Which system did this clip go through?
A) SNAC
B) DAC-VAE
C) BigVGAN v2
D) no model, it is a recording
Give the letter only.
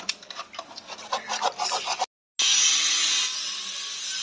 D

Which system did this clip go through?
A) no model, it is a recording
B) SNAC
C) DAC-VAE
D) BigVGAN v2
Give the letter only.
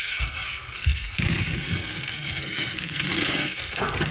B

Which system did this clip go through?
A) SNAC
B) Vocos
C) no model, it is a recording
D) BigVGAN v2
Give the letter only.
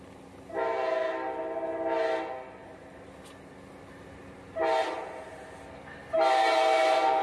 C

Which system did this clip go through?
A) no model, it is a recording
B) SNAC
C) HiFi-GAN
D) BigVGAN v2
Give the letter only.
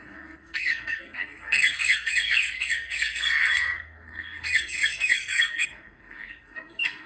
B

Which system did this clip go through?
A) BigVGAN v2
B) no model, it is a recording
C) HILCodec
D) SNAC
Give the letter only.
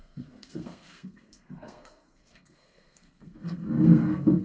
D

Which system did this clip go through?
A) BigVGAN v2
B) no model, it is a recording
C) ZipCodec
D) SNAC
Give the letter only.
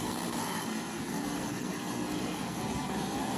D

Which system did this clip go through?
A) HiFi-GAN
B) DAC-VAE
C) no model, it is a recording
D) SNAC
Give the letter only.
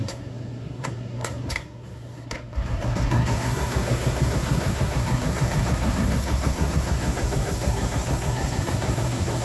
D